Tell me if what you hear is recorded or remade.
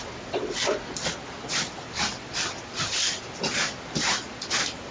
recorded